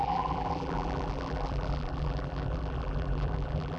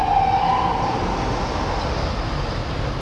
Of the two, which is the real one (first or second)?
second